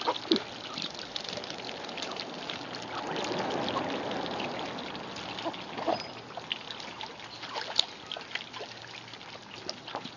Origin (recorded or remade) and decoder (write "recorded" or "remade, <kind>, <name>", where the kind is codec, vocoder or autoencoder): recorded